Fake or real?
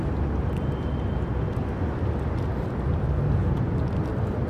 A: real